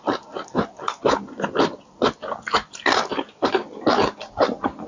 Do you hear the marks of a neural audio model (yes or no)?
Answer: no